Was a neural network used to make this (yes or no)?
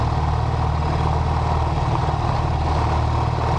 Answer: no